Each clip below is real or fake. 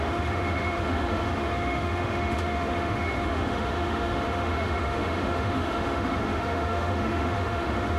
fake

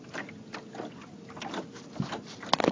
real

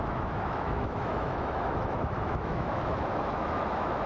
fake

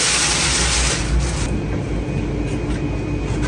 real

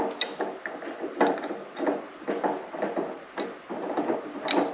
real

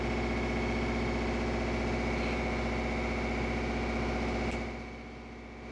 real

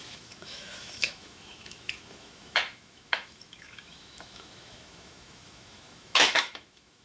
fake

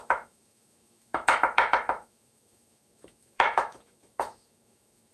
fake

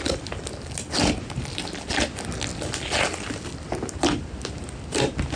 real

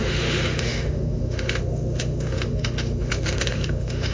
fake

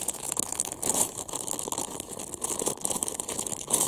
fake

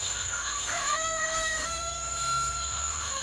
fake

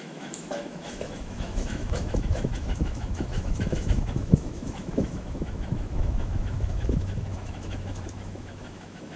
fake